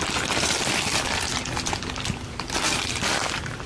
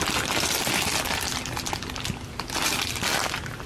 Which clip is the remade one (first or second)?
first